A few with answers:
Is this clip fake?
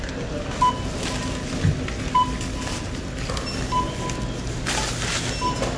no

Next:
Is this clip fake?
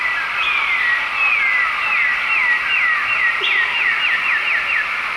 no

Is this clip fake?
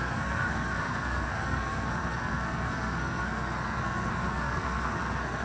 yes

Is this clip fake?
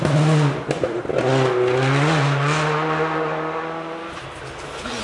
no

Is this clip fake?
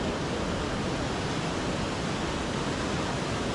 no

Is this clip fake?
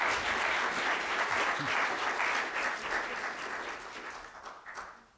no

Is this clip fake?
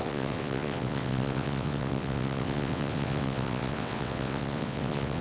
yes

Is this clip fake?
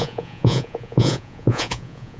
yes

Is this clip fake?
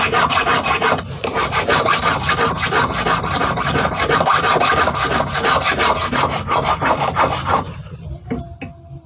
no